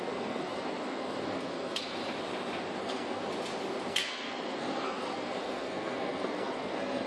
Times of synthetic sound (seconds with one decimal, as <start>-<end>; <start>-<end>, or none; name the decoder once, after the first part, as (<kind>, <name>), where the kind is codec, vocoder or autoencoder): 0.0-2.0 (codec, SNAC); 2.8-3.2; 3.9-7.1